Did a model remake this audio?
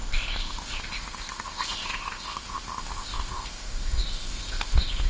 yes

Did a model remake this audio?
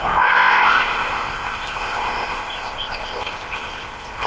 yes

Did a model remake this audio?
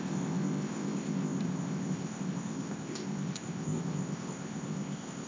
yes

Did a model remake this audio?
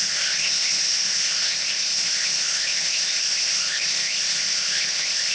yes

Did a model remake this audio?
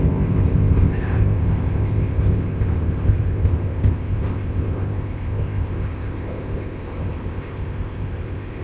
yes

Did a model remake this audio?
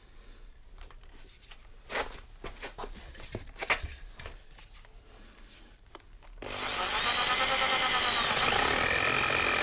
no